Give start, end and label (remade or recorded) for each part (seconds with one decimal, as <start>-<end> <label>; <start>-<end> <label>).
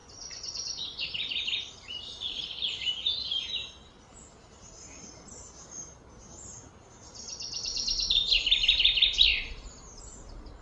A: 0.0-1.0 remade; 1.0-10.6 recorded